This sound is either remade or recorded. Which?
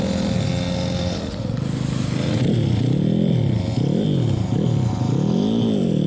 recorded